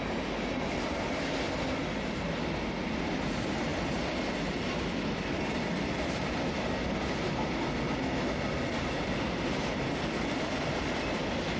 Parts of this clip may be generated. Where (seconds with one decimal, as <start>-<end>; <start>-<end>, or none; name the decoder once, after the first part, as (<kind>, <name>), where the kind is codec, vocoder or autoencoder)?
none